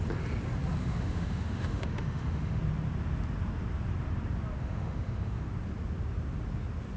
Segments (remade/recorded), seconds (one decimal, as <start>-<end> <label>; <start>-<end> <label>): 0.0-0.8 recorded; 0.8-2.6 remade; 2.6-4.6 recorded; 4.6-5.4 remade; 5.4-7.0 recorded